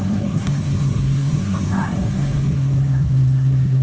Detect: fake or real fake